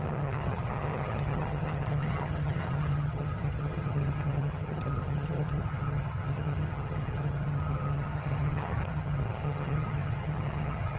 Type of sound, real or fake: fake